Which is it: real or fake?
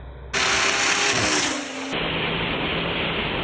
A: real